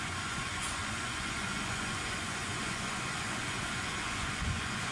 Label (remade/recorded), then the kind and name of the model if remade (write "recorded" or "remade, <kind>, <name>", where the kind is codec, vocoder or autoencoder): remade, vocoder, Vocos